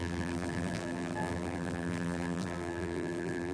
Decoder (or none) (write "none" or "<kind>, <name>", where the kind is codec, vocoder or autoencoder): vocoder, BigVGAN v2